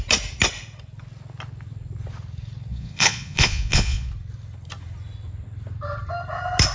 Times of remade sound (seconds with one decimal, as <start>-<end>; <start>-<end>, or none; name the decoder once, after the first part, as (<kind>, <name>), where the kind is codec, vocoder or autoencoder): 2.7-4.1 (vocoder, Vocos)